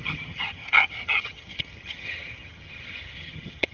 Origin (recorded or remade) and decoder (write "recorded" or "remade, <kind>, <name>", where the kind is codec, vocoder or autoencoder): remade, vocoder, HiFi-GAN